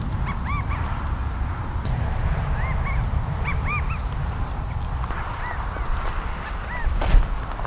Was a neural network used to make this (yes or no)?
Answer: no